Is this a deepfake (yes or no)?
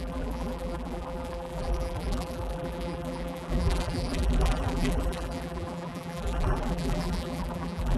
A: yes